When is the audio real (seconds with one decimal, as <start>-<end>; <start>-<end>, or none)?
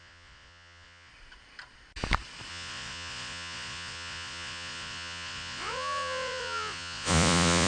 1.1-2.5